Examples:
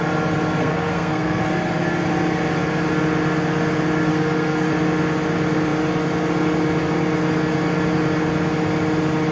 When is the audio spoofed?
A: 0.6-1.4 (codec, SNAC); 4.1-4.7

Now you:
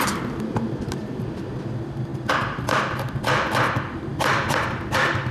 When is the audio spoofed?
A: 1.0-1.5 (vocoder, BigVGAN v2); 4.1-5.3

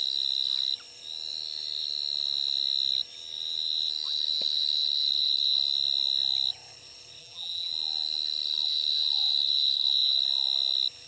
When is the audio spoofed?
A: 7.2-7.7 (vocoder, BigVGAN v2)

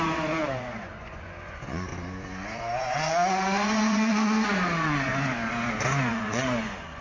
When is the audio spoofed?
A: 0.0-1.9 (vocoder, Vocos); 2.8-5.1; 6.1-7.0

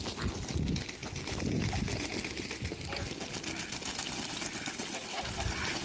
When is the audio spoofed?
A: none

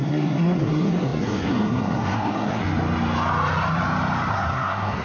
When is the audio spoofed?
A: 0.0-2.6 (codec, SNAC); 4.3-5.0

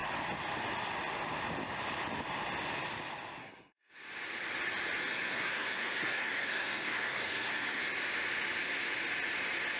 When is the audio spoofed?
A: 3.4-3.9 (codec, SNAC); 5.1-7.8